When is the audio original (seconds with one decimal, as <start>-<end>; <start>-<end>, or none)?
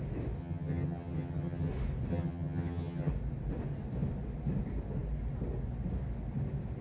0.0-0.4; 1.7-2.1; 3.1-6.8